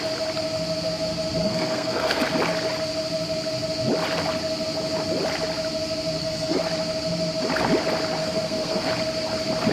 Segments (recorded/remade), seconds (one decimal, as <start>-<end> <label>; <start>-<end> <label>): 0.0-1.4 recorded; 1.4-2.2 remade; 2.2-6.2 recorded; 6.2-6.7 remade; 6.7-8.2 recorded; 8.2-8.9 remade; 8.9-9.7 recorded